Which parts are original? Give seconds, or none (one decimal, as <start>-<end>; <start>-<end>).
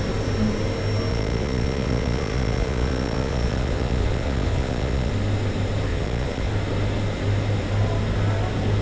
0.0-1.1; 5.1-5.9; 6.5-8.8